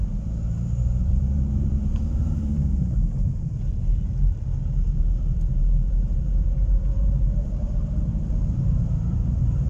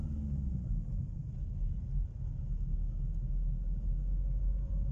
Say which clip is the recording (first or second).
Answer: second